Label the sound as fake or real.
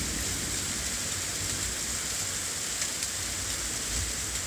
real